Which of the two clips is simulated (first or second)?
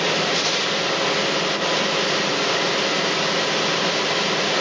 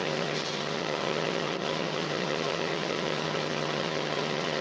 second